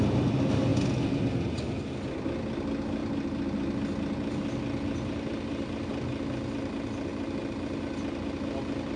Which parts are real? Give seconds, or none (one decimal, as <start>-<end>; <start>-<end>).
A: 0.0-9.0

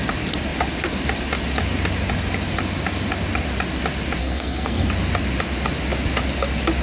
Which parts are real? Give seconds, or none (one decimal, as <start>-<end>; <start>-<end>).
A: 0.0-4.2; 4.9-6.8

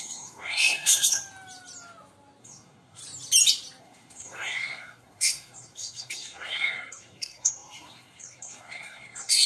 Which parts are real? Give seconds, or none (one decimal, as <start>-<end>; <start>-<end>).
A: 1.2-2.4; 3.0-3.8

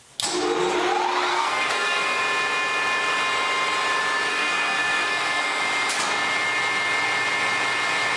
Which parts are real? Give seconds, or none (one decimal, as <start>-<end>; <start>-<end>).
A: 0.0-1.3; 2.2-4.3; 5.6-8.2

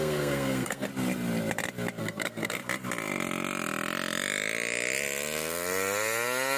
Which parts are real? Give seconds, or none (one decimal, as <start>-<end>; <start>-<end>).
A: 0.9-2.0; 2.6-6.6